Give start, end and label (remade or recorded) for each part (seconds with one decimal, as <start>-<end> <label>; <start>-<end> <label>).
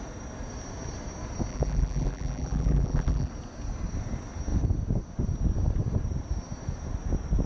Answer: 0.0-1.5 recorded; 1.5-3.3 remade; 3.3-7.5 recorded